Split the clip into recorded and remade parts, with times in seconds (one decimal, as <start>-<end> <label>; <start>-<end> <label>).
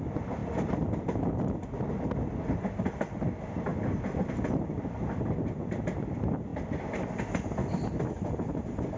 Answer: 0.0-9.0 recorded